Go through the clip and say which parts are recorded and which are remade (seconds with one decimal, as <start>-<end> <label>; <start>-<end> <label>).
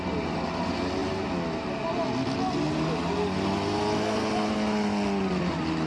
0.0-5.9 recorded